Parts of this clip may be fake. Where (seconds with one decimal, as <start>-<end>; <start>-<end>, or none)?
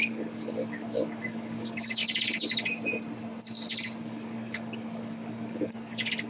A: 0.0-2.0; 4.0-6.3